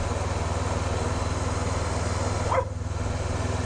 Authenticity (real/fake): real